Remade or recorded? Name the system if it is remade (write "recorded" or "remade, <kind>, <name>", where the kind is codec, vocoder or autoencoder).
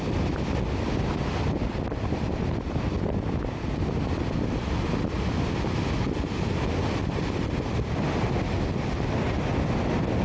recorded